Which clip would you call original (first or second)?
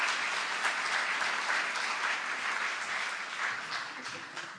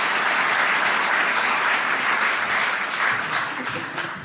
first